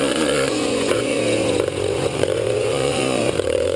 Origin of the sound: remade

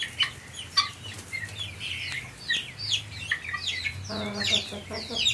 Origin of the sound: recorded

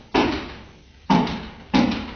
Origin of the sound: recorded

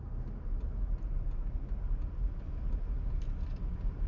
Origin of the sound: recorded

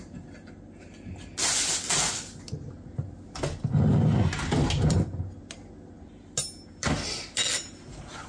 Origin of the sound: recorded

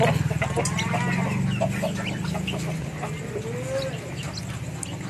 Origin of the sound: recorded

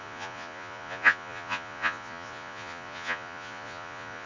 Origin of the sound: remade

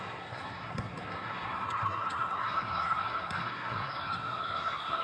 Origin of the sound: remade